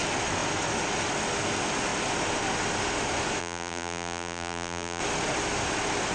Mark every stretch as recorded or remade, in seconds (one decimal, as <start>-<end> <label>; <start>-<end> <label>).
0.0-3.4 recorded; 3.4-5.0 remade; 5.0-6.1 recorded